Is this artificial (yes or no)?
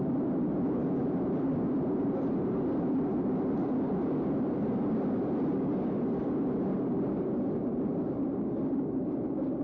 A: no